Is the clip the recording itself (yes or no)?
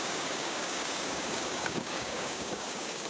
no